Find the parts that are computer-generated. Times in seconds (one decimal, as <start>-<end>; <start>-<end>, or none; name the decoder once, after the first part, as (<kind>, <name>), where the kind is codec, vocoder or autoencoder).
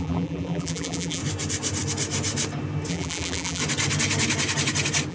0.0-1.2 (vocoder, BigVGAN v2); 2.9-3.6